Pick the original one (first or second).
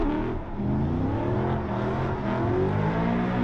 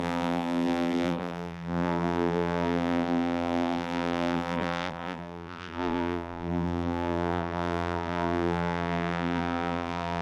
first